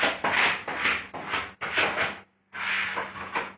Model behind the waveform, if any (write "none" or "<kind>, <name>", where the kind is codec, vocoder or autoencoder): none